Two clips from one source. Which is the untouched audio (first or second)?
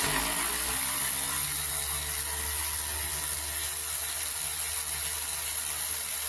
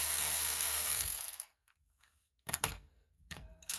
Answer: first